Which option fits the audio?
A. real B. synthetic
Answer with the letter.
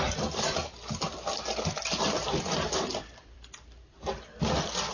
B